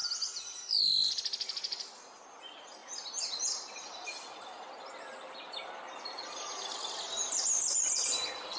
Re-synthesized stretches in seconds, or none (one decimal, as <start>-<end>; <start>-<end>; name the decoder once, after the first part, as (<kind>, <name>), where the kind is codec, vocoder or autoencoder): none